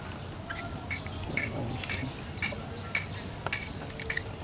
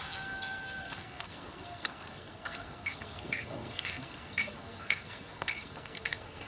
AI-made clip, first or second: second